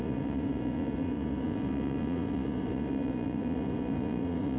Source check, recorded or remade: remade